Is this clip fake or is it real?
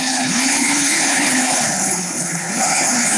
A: fake